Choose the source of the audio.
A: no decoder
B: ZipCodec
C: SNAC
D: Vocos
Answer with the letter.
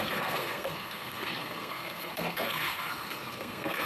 C